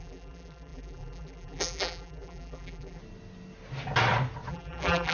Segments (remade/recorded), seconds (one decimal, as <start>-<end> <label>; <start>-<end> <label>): 0.0-3.0 remade; 3.0-4.5 recorded; 4.5-5.1 remade